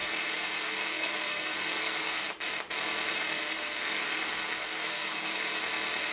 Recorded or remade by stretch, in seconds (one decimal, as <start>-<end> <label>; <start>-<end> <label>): 0.0-2.3 remade; 2.3-3.1 recorded; 3.1-5.6 remade; 5.6-6.1 recorded